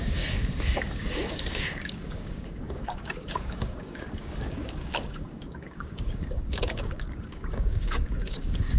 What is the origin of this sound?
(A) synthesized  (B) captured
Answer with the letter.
A